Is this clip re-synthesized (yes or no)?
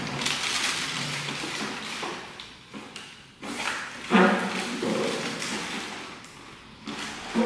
no